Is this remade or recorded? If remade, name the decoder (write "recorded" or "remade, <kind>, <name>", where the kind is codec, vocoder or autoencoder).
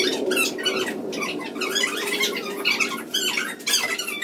recorded